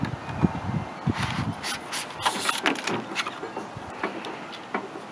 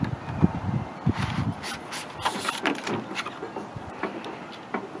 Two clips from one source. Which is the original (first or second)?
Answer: first